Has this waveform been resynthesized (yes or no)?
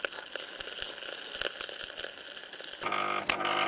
no